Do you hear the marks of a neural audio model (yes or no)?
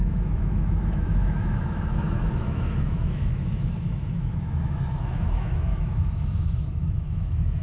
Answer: yes